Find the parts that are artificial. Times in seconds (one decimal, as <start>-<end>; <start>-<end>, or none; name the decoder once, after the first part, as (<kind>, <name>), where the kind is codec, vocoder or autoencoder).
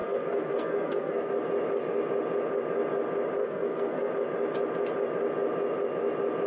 0.0-1.3 (codec, SNAC); 3.4-4.1